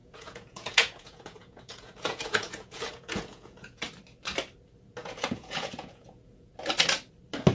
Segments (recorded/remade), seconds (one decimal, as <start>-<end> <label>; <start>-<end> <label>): 0.0-3.8 remade; 3.8-5.0 recorded; 5.0-6.5 remade; 6.5-7.5 recorded